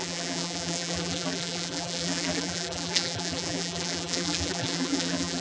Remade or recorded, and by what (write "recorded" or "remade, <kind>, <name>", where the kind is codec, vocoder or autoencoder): remade, vocoder, BigVGAN v2